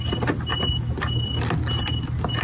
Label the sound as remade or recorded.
recorded